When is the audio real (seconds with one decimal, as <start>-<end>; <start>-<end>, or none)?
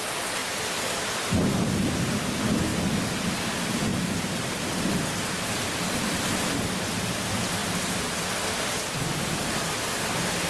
0.0-0.4; 1.9-7.6; 9.9-10.5